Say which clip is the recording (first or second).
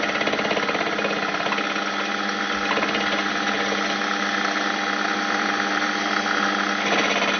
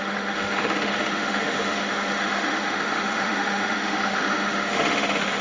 first